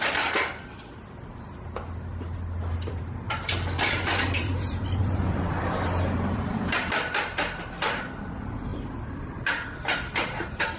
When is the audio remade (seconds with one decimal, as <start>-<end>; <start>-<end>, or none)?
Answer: 0.0-10.8